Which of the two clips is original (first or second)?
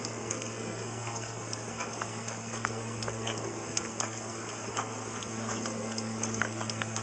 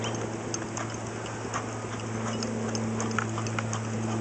second